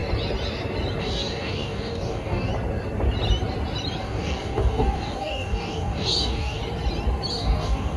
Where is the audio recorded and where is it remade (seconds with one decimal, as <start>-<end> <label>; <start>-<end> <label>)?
0.0-1.0 recorded; 1.0-2.5 remade; 2.5-4.0 recorded; 4.0-6.6 remade; 6.6-7.3 recorded; 7.3-8.0 remade